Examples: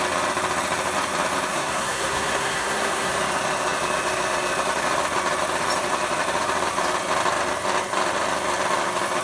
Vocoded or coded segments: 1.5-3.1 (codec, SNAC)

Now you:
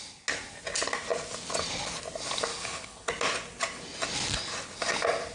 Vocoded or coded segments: 2.5-3.1 (codec, HILCodec)

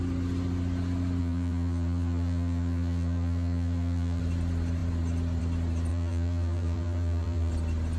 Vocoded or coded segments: 1.2-4.2 (vocoder, BigVGAN v2); 5.9-7.5

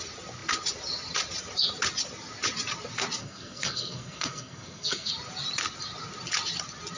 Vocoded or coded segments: 3.2-5.1 (codec, SNAC)

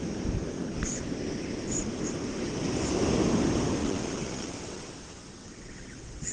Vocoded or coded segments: 3.8-4.9 (vocoder, WaveNeXt); 5.4-6.3